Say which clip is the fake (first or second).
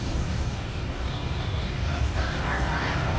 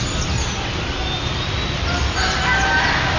first